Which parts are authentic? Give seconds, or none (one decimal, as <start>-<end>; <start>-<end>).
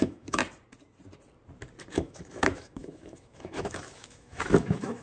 0.4-1.9